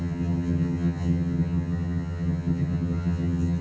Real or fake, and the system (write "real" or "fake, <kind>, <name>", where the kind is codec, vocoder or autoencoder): fake, vocoder, HiFi-GAN